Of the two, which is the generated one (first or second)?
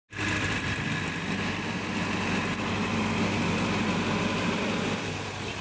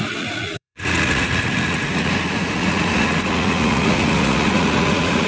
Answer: second